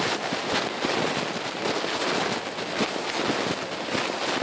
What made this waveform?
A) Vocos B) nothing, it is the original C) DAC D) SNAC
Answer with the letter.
B